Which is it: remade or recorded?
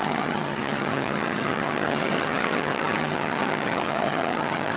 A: remade